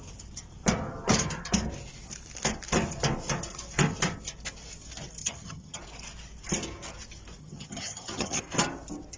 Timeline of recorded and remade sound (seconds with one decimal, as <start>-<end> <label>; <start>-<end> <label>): 0.0-5.2 recorded; 5.2-5.8 remade; 5.8-7.4 recorded; 7.4-8.4 remade; 8.4-9.2 recorded

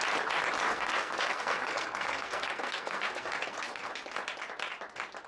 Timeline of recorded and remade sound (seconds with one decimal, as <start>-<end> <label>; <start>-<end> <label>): 0.0-0.7 recorded; 0.7-3.9 remade; 3.9-5.3 recorded

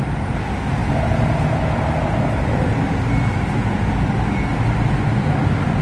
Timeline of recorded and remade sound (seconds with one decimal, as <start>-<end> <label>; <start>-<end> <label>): 0.0-5.8 recorded

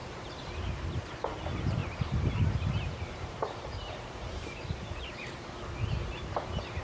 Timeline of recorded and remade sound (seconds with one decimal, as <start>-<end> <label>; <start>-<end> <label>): 0.0-0.7 remade; 0.7-1.8 recorded; 1.8-5.3 remade; 5.3-6.8 recorded

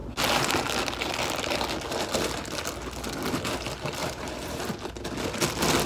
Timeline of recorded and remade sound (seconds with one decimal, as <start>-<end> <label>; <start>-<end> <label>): 0.0-4.0 recorded; 4.0-4.6 remade; 4.6-5.9 recorded